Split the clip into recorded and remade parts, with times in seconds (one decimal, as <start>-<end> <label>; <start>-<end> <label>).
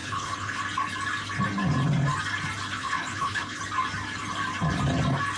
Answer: 0.0-0.6 remade; 0.6-2.8 recorded; 2.8-3.6 remade; 3.6-5.4 recorded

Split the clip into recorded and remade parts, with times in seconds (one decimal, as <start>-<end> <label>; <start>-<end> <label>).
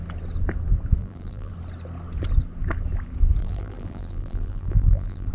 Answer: 0.0-1.0 recorded; 1.0-1.5 remade; 1.5-3.4 recorded; 3.4-5.3 remade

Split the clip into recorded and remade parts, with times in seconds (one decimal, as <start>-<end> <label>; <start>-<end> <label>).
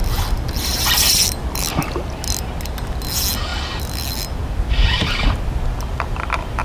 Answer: 0.0-1.7 remade; 1.7-6.6 recorded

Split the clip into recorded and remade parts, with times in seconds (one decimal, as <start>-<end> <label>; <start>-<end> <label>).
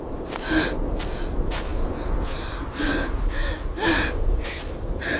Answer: 0.0-5.2 recorded